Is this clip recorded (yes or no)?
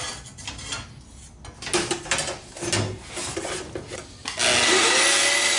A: yes